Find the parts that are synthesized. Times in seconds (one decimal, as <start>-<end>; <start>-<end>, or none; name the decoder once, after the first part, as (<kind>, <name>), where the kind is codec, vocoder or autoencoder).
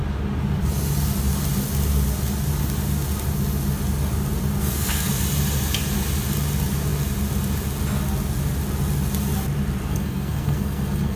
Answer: 4.6-5.1 (codec, SNAC); 9.9-11.2